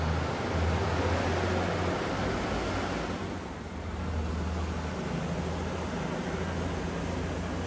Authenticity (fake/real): real